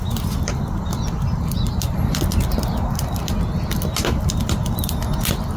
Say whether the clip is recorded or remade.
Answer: recorded